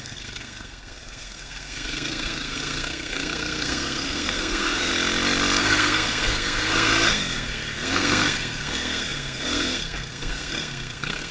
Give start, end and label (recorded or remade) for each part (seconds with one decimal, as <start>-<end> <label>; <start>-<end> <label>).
0.0-4.9 remade; 4.9-5.6 recorded; 5.6-11.3 remade